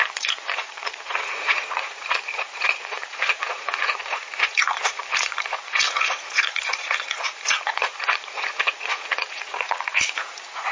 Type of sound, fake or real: fake